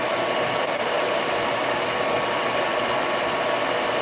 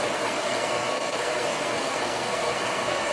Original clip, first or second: first